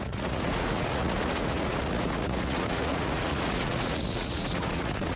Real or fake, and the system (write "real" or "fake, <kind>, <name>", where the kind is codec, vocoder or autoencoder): fake, vocoder, Vocos